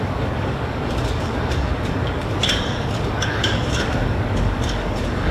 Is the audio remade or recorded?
remade